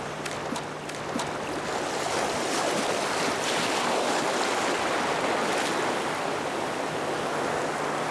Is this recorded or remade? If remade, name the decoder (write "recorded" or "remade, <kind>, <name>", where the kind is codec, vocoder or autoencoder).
recorded